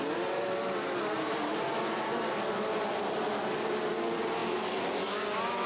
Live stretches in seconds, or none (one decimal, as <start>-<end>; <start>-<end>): 0.0-5.7